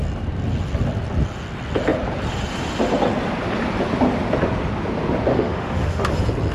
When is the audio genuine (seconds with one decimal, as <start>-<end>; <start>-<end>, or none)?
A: 0.0-5.3; 6.1-6.5